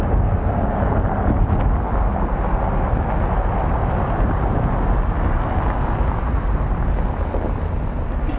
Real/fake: real